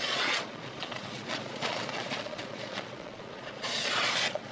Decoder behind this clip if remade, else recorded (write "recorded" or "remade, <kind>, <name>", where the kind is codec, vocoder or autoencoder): remade, vocoder, Vocos